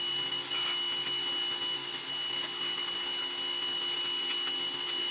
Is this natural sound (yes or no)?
yes